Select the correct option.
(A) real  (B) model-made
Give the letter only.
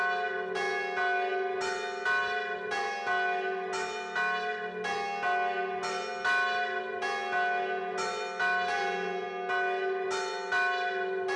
A